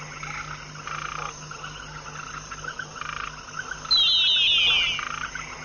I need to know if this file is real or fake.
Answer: real